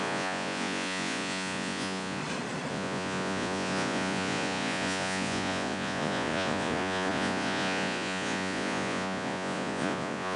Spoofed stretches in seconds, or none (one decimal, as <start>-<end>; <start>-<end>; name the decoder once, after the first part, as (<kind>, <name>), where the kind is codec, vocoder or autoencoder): 0.0-2.2 (vocoder, Vocos); 2.7-10.4